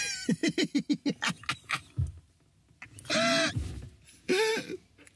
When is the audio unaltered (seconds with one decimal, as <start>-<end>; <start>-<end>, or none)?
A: 0.0-4.5

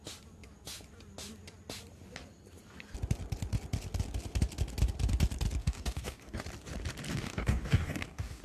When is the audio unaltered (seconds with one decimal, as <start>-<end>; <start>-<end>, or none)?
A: 0.0-5.6; 6.4-7.1

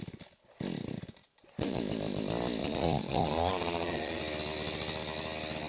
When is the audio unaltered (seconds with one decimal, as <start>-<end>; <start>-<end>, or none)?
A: 0.0-1.2; 1.8-2.6; 4.2-5.7

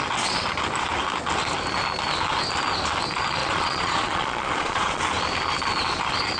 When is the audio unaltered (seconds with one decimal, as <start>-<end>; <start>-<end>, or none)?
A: 0.0-3.4; 5.0-6.4

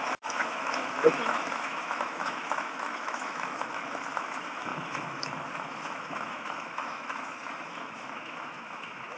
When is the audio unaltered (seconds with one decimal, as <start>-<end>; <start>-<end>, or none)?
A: none

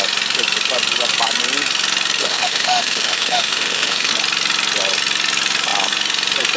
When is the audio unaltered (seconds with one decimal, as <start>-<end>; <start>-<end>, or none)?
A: 0.0-2.2; 4.1-6.6

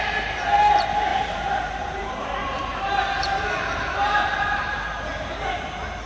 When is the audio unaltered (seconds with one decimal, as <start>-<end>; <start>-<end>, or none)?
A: 0.0-1.1; 4.8-6.1

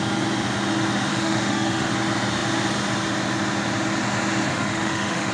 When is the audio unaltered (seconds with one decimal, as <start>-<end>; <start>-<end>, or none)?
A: 0.0-1.1; 1.9-4.5